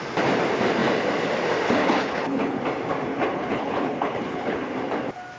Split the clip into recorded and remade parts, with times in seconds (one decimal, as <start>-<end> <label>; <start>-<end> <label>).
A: 0.0-1.8 recorded; 1.8-2.6 remade; 2.6-3.1 recorded; 3.1-4.7 remade; 4.7-5.4 recorded